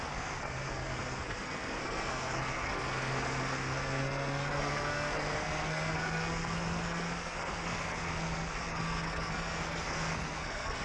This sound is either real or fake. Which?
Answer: fake